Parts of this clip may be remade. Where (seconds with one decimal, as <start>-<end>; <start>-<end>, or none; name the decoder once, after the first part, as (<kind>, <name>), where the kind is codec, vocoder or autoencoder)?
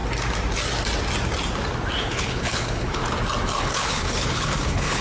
2.0-3.0 (codec, HILCodec); 3.5-5.0